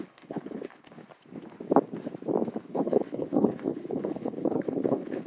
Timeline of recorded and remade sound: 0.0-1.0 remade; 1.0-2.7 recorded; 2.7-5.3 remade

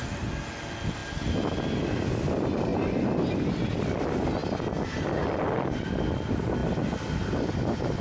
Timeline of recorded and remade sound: 0.0-8.0 recorded

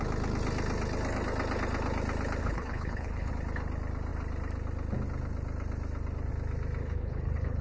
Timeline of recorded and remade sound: 0.0-2.4 recorded; 2.4-3.3 remade; 3.3-6.8 recorded; 6.8-7.6 remade

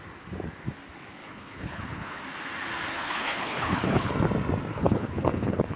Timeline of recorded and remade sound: 0.0-1.2 recorded; 1.2-2.2 remade; 2.2-2.9 recorded; 2.9-4.1 remade; 4.1-4.7 recorded; 4.7-5.8 remade

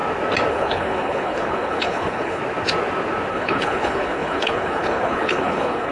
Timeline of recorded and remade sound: 0.0-0.5 recorded; 0.5-2.4 remade; 2.4-3.3 recorded; 3.3-5.9 remade